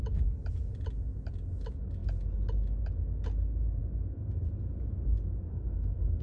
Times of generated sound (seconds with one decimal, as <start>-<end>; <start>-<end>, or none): 5.5-6.2